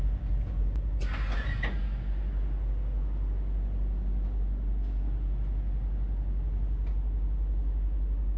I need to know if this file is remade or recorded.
recorded